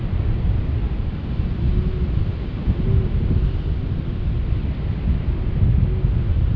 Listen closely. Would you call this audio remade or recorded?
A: recorded